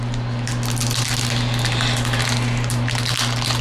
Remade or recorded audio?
recorded